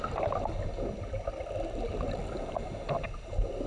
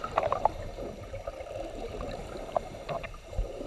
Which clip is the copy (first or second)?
second